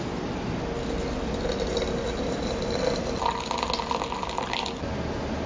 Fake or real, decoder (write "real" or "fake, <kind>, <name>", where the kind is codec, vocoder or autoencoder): real